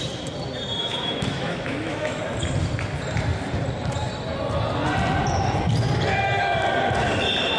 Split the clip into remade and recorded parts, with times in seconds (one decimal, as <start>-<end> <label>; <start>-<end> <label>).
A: 0.0-0.8 recorded; 0.8-2.2 remade; 2.2-7.6 recorded